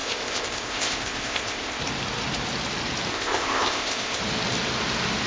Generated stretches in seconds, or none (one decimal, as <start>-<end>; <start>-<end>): 0.0-1.8; 3.1-4.2